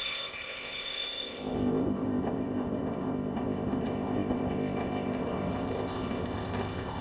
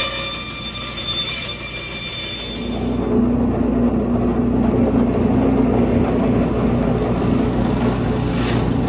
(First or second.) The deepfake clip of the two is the first